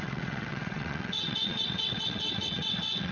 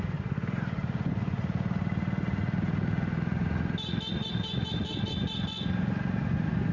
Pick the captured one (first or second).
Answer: second